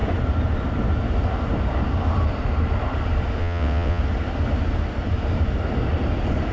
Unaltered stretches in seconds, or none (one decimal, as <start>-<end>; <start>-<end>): 0.0-3.4; 4.0-6.5